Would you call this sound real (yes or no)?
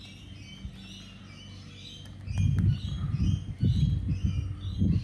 yes